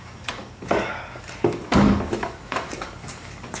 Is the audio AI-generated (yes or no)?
yes